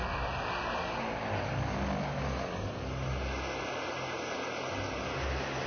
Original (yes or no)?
yes